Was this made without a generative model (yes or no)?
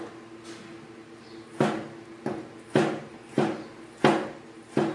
yes